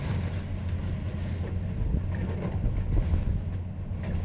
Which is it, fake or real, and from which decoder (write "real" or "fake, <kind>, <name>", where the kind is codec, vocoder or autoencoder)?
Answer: real